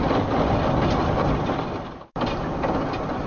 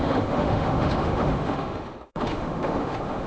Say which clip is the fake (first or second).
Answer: second